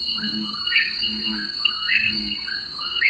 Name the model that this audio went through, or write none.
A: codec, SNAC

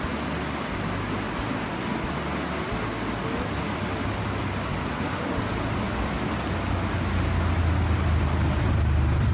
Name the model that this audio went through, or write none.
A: none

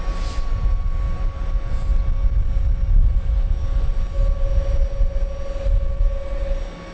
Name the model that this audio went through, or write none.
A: none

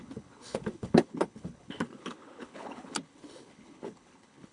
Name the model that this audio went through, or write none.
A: codec, HILCodec